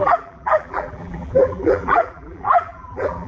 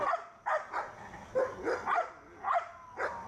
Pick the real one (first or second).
second